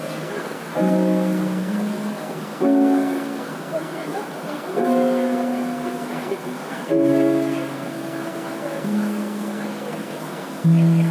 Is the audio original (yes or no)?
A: no